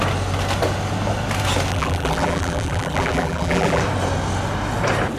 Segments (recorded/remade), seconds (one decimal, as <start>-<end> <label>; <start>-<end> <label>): 0.0-1.7 recorded; 1.7-3.8 remade; 3.8-5.2 recorded